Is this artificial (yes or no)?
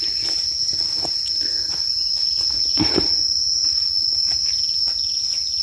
no